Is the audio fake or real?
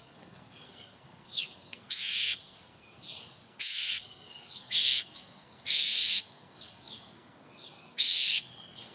fake